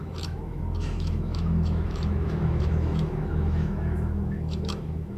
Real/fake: fake